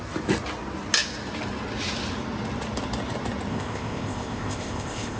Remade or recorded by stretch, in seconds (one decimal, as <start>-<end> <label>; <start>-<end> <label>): 0.0-3.5 recorded; 3.5-5.2 remade